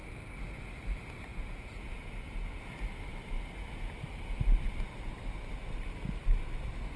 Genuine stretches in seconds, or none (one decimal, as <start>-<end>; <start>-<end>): 0.0-1.3; 2.6-7.0